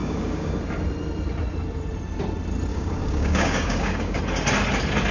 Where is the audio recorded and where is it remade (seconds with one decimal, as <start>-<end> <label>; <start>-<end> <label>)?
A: 0.0-0.5 remade; 0.5-2.7 recorded; 2.7-4.2 remade; 4.2-5.1 recorded